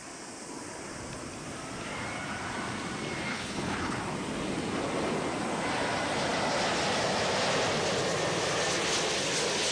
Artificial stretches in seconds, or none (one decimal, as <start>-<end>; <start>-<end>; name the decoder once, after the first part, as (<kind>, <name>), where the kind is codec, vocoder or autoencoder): 3.3-4.0 (codec, HILCodec)